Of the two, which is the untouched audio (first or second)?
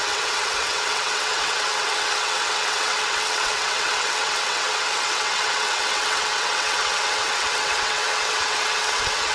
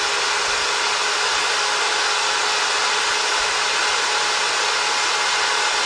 second